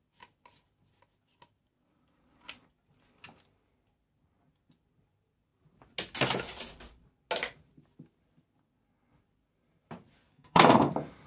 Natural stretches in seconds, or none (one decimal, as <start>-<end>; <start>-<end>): 0.0-10.3; 10.9-11.3